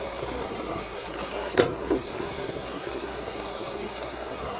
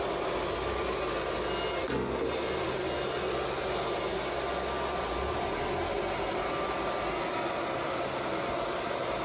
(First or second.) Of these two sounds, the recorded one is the second